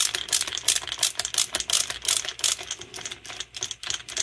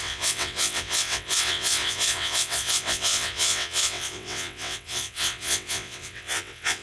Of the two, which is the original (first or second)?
first